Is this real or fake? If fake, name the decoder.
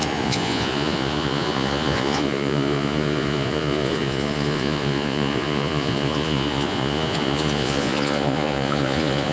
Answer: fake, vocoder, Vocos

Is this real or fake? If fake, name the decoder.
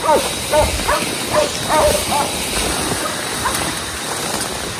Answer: real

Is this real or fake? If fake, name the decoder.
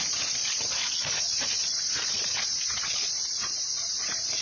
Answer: fake, vocoder, Vocos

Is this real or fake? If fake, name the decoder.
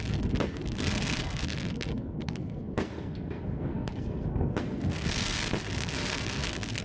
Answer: fake, codec, SNAC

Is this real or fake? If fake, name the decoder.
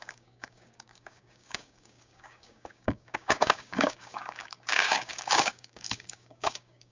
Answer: fake, codec, DAC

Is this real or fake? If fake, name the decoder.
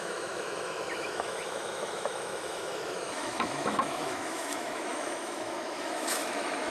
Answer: fake, autoencoder, DAC-VAE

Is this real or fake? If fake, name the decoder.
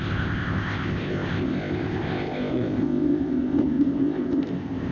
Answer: fake, codec, ZipCodec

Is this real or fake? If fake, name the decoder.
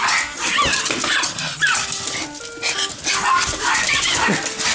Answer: real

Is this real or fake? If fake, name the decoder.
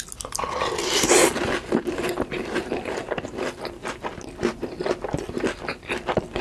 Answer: real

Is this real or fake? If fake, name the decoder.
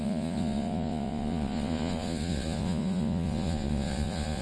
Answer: fake, vocoder, Vocos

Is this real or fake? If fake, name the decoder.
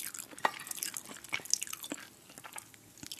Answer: real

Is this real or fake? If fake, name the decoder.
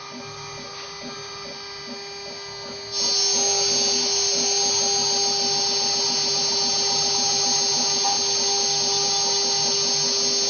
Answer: real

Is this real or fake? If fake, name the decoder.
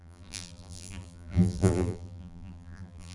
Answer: fake, vocoder, BigVGAN v2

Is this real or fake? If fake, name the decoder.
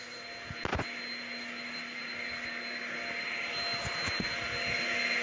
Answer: real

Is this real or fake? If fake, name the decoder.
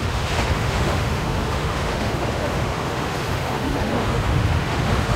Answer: fake, autoencoder, DAC-VAE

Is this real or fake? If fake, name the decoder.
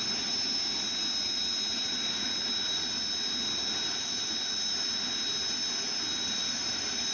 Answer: real